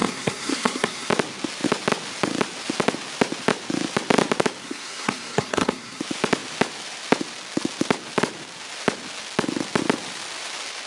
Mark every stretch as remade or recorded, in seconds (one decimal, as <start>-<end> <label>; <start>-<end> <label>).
0.0-1.1 remade; 1.1-4.6 recorded; 4.6-6.0 remade; 6.0-10.9 recorded